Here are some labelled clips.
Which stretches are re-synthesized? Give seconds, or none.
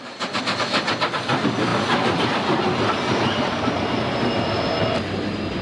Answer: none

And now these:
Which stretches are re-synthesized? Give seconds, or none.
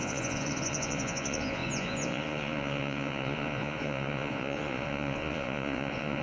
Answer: 0.0-6.2 (vocoder, Vocos)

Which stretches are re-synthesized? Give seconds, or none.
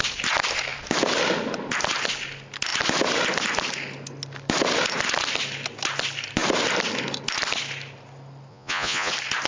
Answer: 8.5-9.1 (vocoder, Vocos)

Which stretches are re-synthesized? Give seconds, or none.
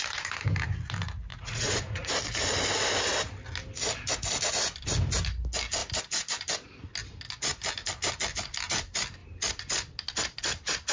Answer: 1.3-2.1 (vocoder, Vocos)